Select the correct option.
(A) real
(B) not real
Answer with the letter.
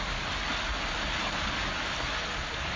A